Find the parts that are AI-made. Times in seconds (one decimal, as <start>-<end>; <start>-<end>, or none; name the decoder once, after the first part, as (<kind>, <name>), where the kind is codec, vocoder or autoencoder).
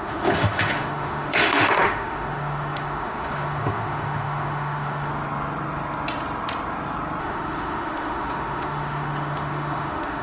0.0-5.1 (autoencoder, DAC-VAE); 7.2-10.2